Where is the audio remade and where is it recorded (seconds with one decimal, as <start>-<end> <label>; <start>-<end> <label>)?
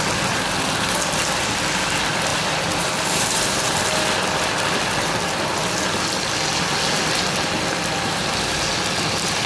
0.0-2.3 recorded; 2.3-3.8 remade; 3.8-9.5 recorded